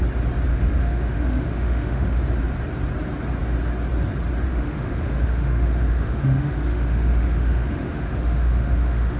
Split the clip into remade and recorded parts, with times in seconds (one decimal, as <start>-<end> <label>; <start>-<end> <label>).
0.0-0.5 recorded; 0.5-2.2 remade; 2.2-4.5 recorded; 4.5-9.2 remade